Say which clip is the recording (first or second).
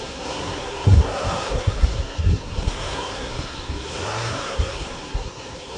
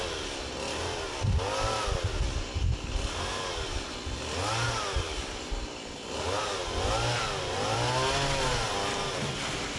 second